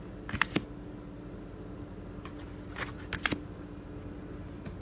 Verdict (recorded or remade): recorded